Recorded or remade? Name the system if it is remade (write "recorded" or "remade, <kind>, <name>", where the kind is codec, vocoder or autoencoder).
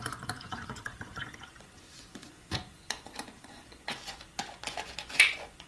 remade, vocoder, Vocos